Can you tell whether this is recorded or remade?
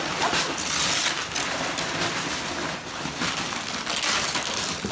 recorded